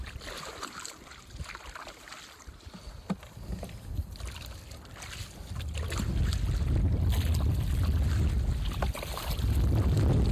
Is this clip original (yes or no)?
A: yes